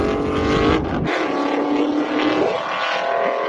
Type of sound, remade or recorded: recorded